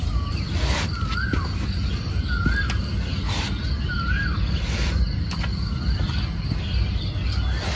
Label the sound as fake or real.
real